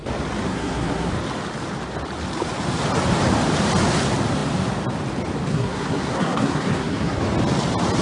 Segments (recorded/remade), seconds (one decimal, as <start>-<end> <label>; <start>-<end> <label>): 0.0-0.5 recorded; 0.5-1.1 remade; 1.1-5.5 recorded; 5.5-7.2 remade; 7.2-8.0 recorded